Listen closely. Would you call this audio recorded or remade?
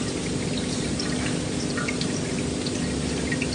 recorded